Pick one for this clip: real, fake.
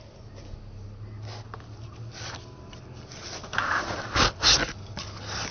real